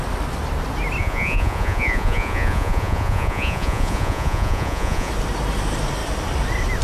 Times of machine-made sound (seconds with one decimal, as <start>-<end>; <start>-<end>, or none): 1.0-5.1